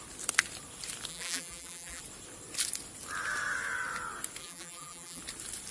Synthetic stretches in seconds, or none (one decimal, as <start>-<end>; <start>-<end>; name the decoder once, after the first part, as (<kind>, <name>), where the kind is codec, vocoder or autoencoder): 1.1-2.0 (vocoder, BigVGAN v2); 4.4-5.2